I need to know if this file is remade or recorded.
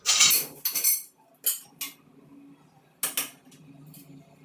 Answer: recorded